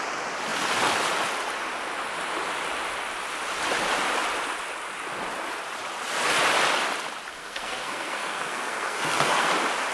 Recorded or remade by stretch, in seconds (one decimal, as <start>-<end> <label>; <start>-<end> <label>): 0.0-7.3 recorded; 7.3-9.5 remade; 9.5-9.9 recorded